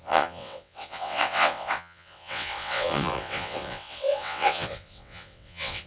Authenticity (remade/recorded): remade